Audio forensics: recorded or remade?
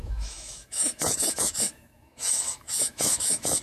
remade